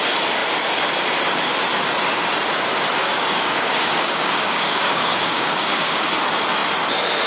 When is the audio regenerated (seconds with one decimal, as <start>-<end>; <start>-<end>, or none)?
3.0-6.0